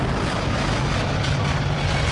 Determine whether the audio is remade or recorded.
recorded